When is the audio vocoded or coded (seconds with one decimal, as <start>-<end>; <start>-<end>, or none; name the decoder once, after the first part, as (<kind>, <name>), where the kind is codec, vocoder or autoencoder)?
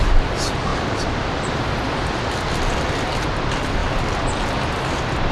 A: none